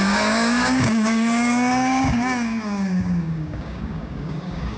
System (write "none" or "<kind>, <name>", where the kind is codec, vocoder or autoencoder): codec, DAC